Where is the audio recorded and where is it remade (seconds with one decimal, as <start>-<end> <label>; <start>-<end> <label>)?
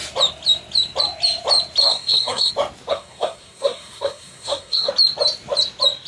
0.0-1.8 recorded; 1.8-2.5 remade; 2.5-2.9 recorded; 2.9-4.9 remade; 4.9-6.1 recorded